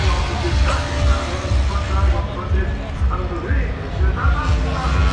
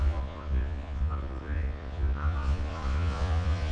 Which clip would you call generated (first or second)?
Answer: second